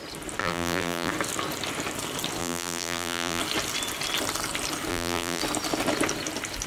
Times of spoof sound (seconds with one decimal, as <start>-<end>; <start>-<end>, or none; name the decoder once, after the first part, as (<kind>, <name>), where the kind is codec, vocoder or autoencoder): 0.4-1.1 (vocoder, BigVGAN v2); 2.4-3.4; 4.9-5.4